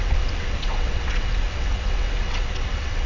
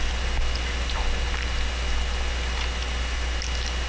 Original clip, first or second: second